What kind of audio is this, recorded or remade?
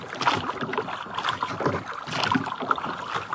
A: recorded